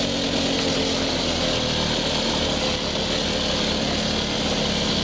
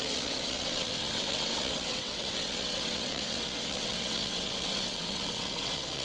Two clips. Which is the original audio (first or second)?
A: first